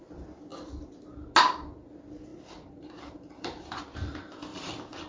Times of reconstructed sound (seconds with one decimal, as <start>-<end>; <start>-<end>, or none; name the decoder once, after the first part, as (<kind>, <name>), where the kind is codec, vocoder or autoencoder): 2.3-3.8 (vocoder, BigVGAN v2); 4.5-5.1